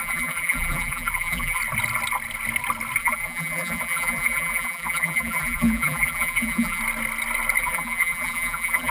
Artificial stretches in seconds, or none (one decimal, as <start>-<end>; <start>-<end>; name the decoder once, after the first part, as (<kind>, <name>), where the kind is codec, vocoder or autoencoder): 0.0-1.6 (vocoder, BigVGAN v2); 3.0-6.8; 7.6-8.9